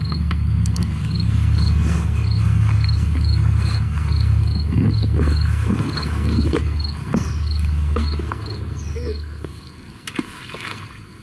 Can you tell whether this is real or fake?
fake